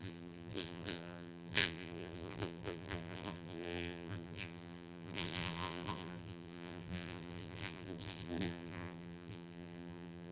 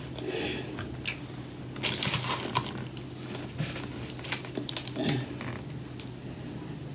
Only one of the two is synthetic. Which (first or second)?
first